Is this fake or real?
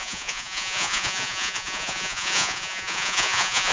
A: fake